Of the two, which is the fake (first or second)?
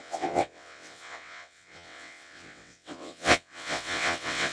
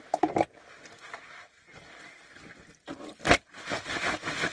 first